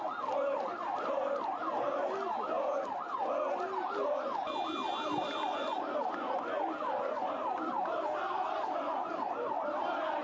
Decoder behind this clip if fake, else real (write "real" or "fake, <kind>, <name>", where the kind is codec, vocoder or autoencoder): real